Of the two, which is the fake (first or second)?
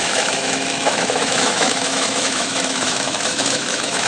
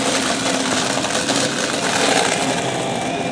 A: first